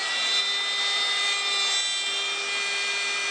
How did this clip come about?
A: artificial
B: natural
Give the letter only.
B